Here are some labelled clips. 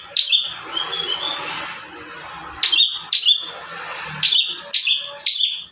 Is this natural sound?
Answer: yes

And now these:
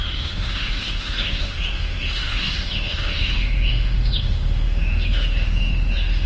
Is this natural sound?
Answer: no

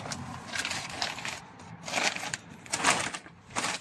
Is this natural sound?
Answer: yes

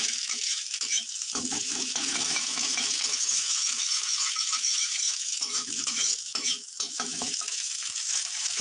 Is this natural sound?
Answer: no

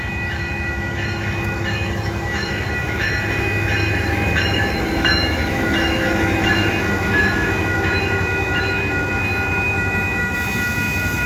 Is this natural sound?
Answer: no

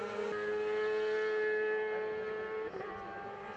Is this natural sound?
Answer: yes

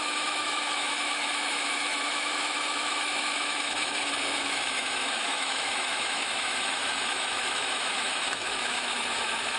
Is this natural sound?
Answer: no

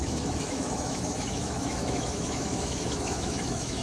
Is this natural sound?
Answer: no